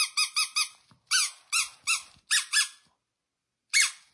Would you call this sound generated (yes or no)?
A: no